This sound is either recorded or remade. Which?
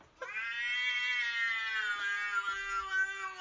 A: recorded